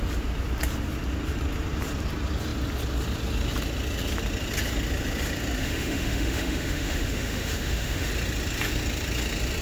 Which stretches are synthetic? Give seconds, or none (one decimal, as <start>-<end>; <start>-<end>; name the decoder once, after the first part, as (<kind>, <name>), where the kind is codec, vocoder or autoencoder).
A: 5.6-8.1 (autoencoder, DAC-VAE)